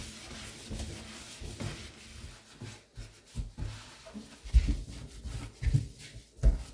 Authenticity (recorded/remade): recorded